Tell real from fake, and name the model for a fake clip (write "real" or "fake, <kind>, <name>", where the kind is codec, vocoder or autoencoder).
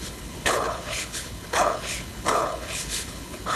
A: fake, codec, HILCodec